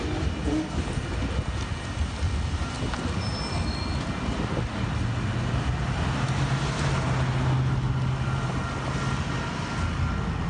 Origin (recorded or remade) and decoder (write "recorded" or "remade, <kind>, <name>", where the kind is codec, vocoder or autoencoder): recorded